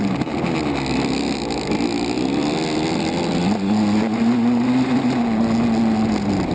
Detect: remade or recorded recorded